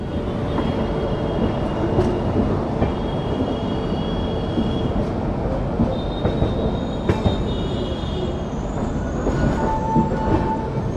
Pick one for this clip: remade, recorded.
recorded